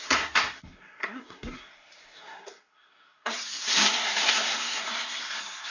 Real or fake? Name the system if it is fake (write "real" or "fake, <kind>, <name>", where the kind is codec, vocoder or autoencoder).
fake, codec, SNAC